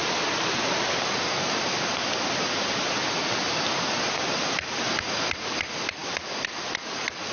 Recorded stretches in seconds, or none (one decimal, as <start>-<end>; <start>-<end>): 0.0-7.3